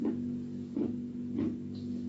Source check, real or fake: fake